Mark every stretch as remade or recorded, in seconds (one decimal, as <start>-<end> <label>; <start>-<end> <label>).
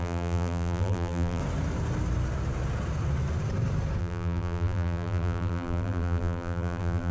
0.0-1.4 remade; 1.4-4.0 recorded; 4.0-7.1 remade